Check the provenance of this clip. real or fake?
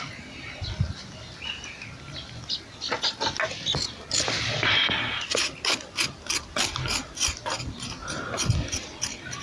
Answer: real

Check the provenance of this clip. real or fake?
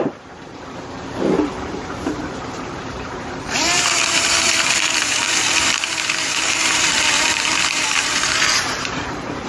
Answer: fake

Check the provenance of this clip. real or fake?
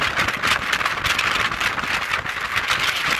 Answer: real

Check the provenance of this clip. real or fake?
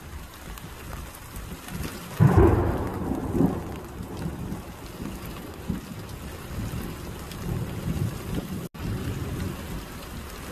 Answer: real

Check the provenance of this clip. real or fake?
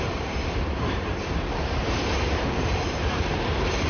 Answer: fake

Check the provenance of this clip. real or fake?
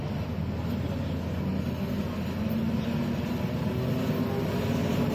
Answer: real